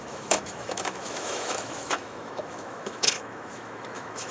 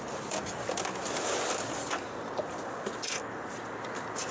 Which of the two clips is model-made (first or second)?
first